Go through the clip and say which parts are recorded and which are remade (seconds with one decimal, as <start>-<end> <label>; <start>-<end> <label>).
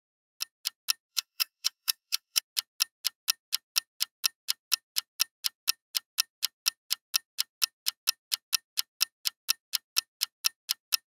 0.0-1.1 recorded; 1.1-2.4 remade; 2.4-11.1 recorded